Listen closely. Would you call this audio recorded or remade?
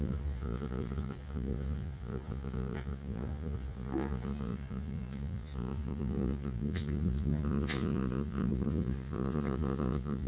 remade